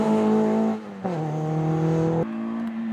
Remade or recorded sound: recorded